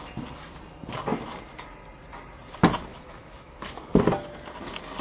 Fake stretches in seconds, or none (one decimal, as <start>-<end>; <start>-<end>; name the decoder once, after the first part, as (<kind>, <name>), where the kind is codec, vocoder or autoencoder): 2.9-3.9 (autoencoder, DAC-VAE)